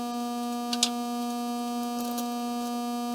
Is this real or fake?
real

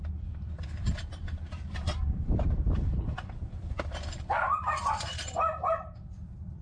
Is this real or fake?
fake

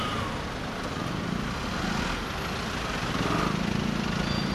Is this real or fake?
real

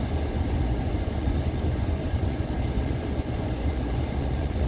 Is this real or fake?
fake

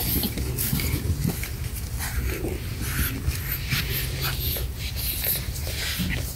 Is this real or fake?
real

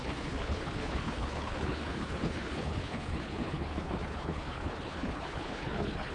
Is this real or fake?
fake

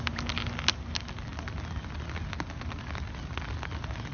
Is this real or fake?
real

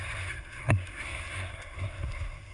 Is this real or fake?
fake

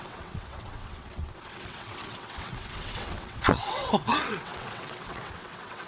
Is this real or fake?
fake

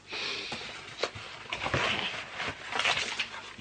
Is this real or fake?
real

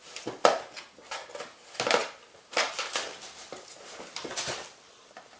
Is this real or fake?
real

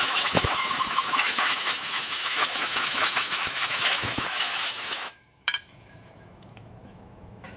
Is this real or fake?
fake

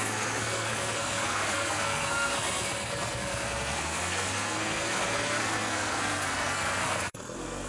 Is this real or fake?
fake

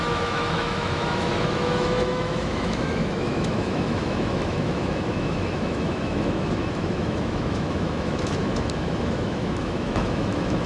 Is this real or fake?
fake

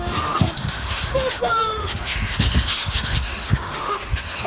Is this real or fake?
fake